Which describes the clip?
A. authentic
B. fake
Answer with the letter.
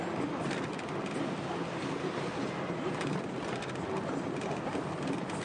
A